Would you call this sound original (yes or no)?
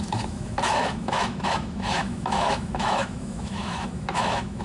no